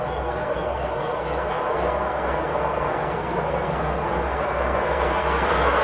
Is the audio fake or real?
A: fake